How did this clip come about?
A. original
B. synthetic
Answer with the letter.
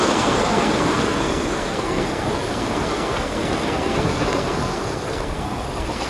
B